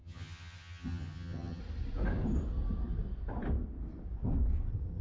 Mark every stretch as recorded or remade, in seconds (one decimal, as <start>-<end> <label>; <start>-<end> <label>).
0.0-1.6 remade; 1.6-5.0 recorded

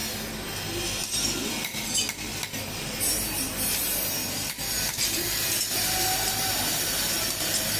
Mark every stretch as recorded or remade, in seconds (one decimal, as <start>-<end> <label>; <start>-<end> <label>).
0.0-4.2 recorded; 4.2-5.9 remade; 5.9-7.8 recorded

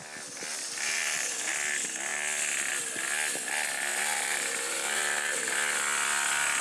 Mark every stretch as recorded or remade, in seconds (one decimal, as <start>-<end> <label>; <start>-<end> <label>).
0.0-0.5 recorded; 0.5-1.5 remade; 1.5-3.9 recorded; 3.9-5.4 remade; 5.4-6.6 recorded

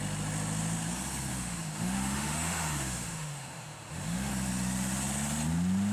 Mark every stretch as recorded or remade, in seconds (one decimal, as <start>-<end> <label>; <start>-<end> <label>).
0.0-1.3 recorded; 1.3-4.3 remade; 4.3-5.9 recorded

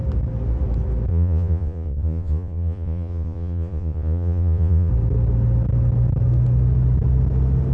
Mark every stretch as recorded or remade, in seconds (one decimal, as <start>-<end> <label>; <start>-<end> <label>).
0.0-1.1 recorded; 1.1-4.9 remade; 4.9-7.7 recorded

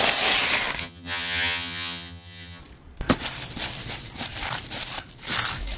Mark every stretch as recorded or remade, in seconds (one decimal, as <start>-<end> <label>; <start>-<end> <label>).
0.0-0.8 recorded; 0.8-2.6 remade; 2.6-5.8 recorded

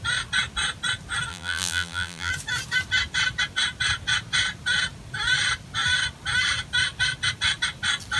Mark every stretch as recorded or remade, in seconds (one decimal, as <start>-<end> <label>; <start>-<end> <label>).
0.0-1.3 recorded; 1.3-2.3 remade; 2.3-8.2 recorded